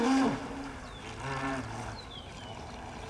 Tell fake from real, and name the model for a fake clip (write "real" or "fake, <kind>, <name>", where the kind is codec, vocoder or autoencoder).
real